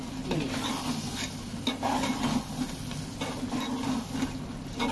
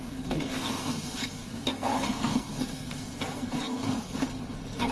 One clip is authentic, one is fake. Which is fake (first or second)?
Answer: second